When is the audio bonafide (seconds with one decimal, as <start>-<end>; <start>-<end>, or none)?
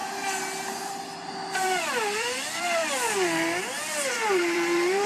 0.0-0.9; 2.8-4.1